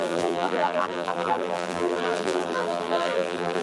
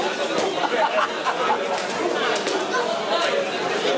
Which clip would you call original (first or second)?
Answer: second